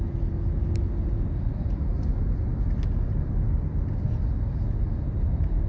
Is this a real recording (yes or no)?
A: yes